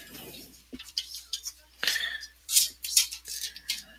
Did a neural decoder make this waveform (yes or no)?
yes